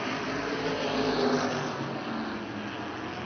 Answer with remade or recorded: recorded